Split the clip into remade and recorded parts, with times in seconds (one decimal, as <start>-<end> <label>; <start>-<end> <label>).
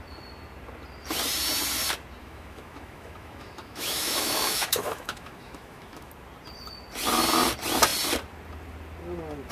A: 0.0-2.2 recorded; 2.2-6.1 remade; 6.1-9.5 recorded